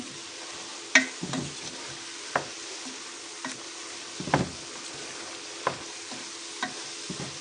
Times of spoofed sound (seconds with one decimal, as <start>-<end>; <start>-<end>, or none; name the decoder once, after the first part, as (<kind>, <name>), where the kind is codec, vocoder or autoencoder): none